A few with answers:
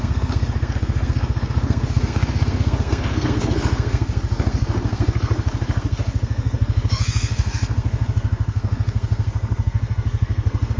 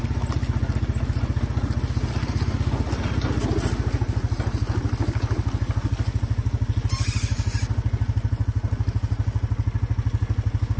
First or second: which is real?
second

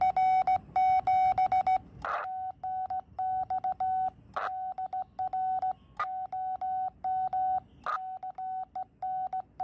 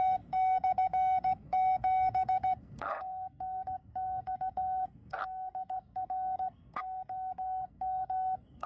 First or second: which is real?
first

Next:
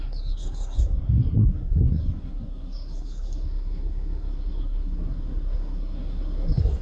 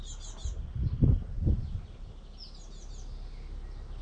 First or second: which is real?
second